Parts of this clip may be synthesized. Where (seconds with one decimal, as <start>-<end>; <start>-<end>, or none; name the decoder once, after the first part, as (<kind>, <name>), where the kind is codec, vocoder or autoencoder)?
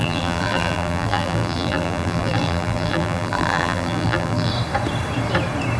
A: 0.0-4.5 (vocoder, BigVGAN v2)